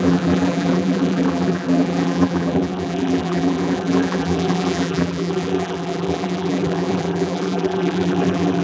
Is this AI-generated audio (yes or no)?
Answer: yes